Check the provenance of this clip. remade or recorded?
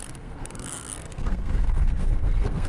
remade